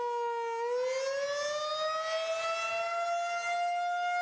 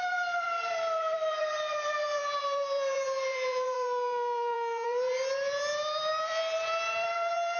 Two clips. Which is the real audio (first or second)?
first